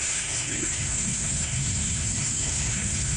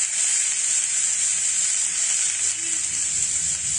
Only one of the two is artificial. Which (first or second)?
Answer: first